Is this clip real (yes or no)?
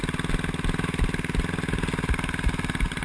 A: yes